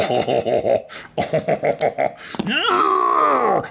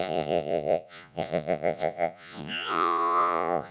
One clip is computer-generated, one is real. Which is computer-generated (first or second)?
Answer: second